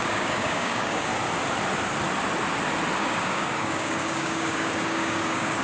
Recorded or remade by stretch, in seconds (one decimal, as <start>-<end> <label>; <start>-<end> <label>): 0.0-1.1 remade; 1.1-3.0 recorded; 3.0-5.6 remade